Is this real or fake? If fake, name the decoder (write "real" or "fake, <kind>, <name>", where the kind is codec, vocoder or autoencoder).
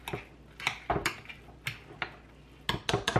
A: real